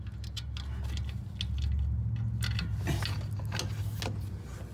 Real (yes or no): yes